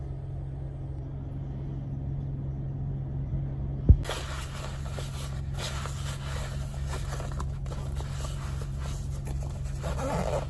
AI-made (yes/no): no